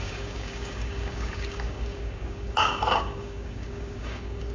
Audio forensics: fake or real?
fake